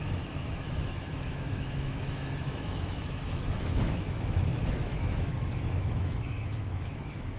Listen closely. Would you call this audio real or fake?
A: fake